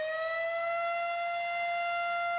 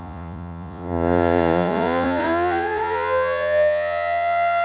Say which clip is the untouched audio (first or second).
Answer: first